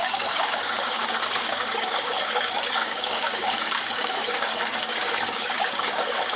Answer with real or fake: fake